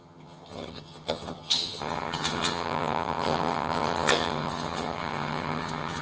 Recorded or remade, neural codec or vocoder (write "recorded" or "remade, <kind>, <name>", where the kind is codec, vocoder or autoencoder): remade, vocoder, HiFi-GAN